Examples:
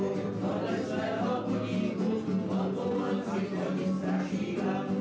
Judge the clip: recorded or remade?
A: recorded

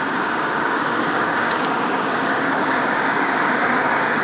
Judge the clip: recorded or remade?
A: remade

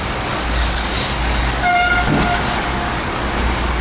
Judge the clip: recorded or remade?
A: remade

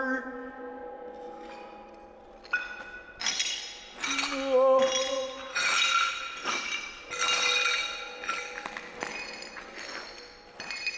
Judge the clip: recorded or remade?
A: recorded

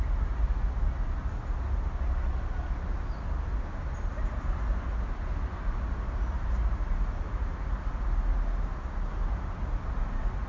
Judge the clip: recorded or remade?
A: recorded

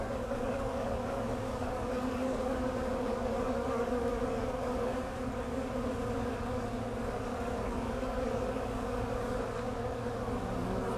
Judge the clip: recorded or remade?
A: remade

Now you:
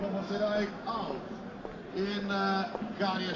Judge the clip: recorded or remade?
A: recorded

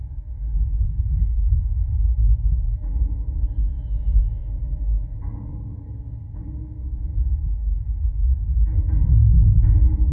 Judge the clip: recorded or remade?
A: remade